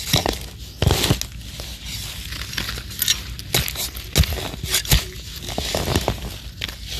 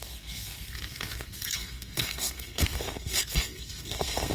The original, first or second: first